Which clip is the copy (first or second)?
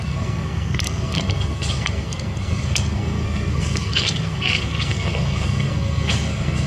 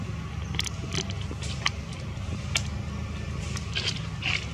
first